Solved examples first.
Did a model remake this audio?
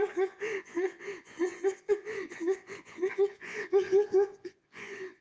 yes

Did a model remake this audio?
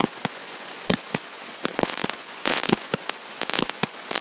yes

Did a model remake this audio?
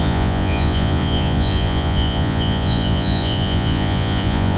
yes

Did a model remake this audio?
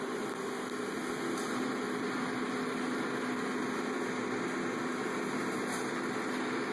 no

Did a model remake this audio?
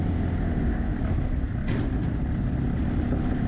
no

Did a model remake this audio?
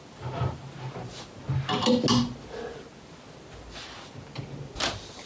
no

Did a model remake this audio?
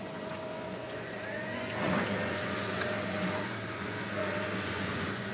yes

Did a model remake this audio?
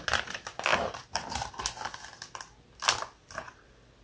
no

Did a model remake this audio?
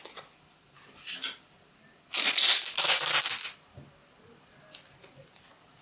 no